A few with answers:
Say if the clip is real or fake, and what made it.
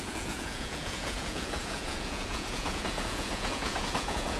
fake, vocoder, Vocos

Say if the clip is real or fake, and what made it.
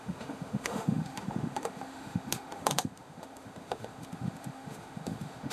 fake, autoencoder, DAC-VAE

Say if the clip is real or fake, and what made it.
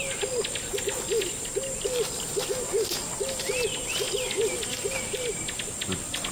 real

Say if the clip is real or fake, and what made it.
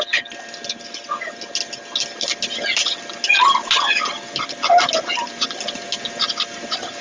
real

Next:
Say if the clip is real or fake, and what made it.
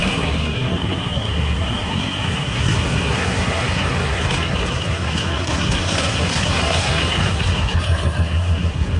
fake, codec, SNAC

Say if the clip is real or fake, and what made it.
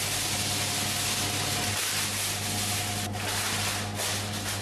real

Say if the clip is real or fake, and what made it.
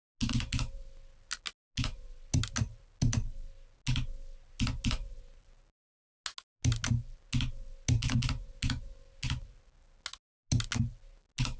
real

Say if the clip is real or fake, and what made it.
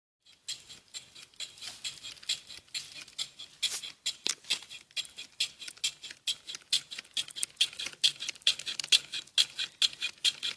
real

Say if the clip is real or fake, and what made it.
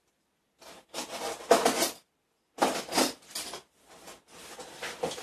real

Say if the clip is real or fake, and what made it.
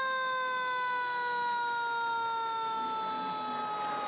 real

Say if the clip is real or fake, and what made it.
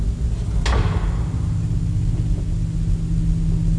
real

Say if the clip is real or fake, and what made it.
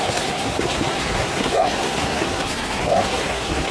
fake, codec, SNAC